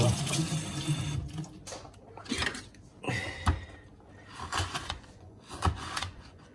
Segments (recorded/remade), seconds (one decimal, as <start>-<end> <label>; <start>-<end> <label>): 0.0-0.6 remade; 0.6-4.5 recorded; 4.5-6.5 remade